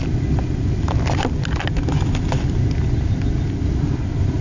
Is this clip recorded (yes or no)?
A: yes